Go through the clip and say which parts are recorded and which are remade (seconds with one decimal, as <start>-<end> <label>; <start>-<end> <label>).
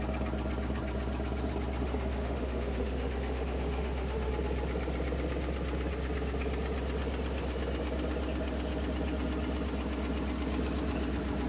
0.0-1.8 recorded; 1.8-4.3 remade; 4.3-11.5 recorded